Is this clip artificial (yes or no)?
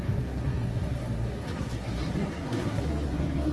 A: yes